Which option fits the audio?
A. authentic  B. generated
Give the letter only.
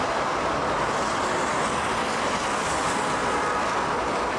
A